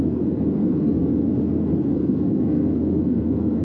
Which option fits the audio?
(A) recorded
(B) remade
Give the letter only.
B